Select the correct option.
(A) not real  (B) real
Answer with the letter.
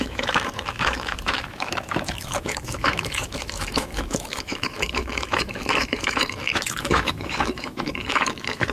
A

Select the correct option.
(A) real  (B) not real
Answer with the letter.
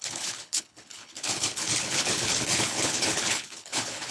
B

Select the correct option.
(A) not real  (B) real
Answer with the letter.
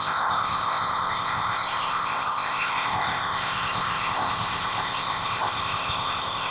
A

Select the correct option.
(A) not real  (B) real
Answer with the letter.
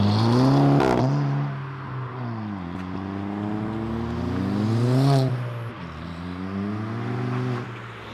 B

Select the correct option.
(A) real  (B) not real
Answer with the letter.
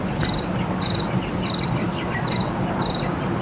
A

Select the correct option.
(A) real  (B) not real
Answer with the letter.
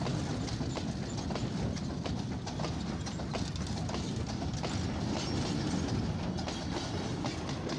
A